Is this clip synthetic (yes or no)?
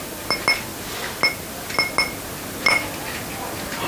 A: no